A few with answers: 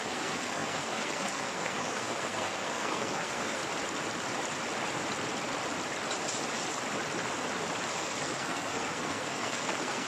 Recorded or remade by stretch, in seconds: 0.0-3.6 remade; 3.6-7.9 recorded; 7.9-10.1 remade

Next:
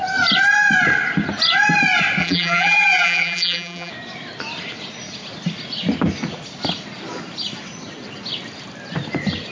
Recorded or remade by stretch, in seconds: 0.0-2.2 recorded; 2.2-3.9 remade; 3.9-9.5 recorded

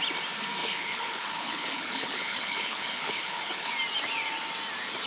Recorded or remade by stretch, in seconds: 0.0-0.6 recorded; 0.6-3.7 remade; 3.7-5.1 recorded

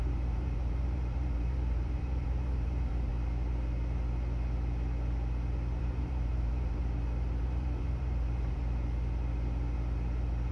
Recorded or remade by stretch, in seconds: 0.0-3.1 remade; 3.1-5.8 recorded; 5.8-6.8 remade; 6.8-7.4 recorded; 7.4-8.6 remade; 8.6-10.5 recorded

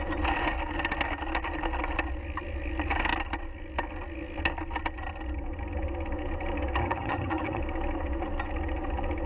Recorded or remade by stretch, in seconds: 0.0-6.8 recorded; 6.8-7.6 remade; 7.6-9.3 recorded

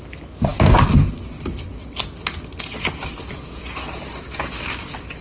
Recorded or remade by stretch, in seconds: 0.0-5.2 recorded

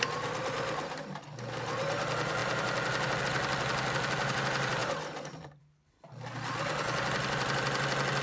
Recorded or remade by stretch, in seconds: 0.0-4.8 recorded; 4.8-5.6 remade; 5.6-8.2 recorded

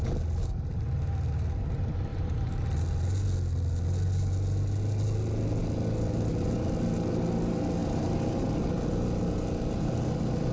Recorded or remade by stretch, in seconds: 0.0-2.1 recorded; 2.1-2.6 remade; 2.6-7.8 recorded; 7.8-8.5 remade; 8.5-10.5 recorded